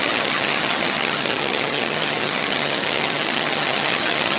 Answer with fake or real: fake